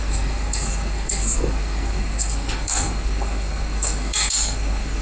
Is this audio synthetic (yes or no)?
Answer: yes